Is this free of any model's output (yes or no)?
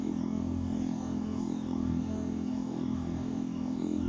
no